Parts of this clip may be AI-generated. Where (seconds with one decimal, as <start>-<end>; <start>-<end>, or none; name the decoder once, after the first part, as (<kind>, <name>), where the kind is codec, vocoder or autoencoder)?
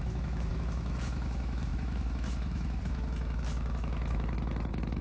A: 0.0-5.0 (autoencoder, DAC-VAE)